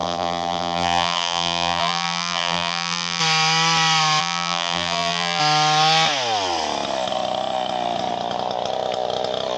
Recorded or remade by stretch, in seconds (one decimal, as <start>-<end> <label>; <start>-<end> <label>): 0.0-3.2 remade; 3.2-4.2 recorded; 4.2-5.4 remade; 5.4-9.6 recorded